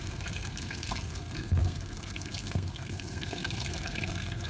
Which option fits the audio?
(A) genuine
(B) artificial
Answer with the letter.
B